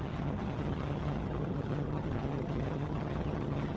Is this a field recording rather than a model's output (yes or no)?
no